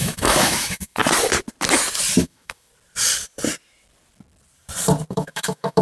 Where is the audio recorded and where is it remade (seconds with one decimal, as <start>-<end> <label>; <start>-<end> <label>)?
0.0-1.0 remade; 1.0-2.2 recorded; 2.2-2.7 remade; 2.7-5.1 recorded; 5.1-5.8 remade